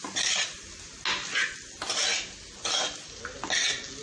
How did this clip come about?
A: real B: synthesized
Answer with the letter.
A